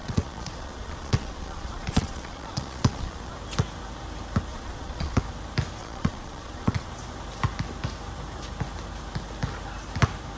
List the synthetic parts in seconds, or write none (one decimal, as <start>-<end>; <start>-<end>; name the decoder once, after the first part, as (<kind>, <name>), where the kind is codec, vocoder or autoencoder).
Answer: 0.0-3.3 (vocoder, Vocos); 4.5-5.2; 5.8-6.9